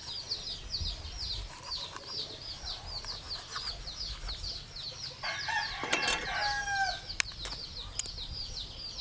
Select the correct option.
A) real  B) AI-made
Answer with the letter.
A